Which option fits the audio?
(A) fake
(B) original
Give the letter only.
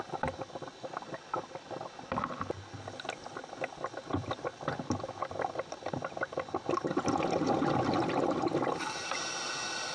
B